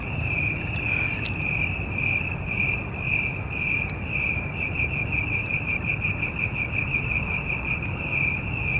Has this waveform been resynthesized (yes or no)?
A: no